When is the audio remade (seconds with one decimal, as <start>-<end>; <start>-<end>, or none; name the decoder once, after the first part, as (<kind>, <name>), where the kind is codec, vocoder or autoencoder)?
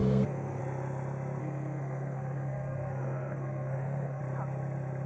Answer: 0.0-0.6 (codec, SNAC); 1.4-4.2